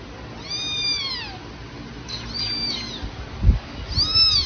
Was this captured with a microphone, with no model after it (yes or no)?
yes